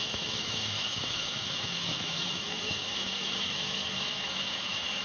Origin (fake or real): fake